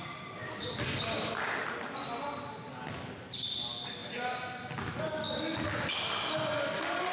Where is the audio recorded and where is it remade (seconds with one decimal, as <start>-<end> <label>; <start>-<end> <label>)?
0.0-7.1 recorded